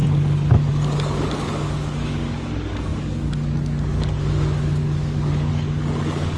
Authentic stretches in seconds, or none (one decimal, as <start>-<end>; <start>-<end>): 0.0-0.7